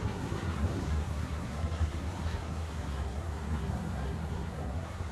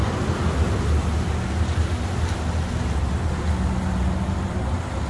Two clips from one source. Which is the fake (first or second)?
first